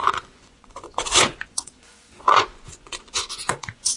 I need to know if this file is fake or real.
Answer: fake